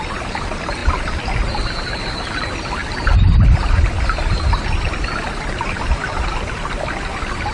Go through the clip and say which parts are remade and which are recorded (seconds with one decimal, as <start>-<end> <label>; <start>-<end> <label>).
0.0-7.5 recorded